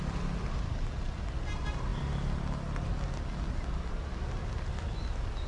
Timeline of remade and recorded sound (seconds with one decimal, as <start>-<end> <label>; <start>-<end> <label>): 0.0-5.5 recorded